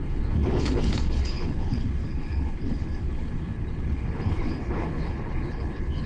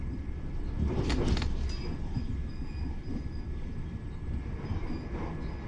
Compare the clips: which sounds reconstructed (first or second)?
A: first